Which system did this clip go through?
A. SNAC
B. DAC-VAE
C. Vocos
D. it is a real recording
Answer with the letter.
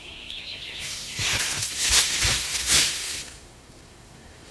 A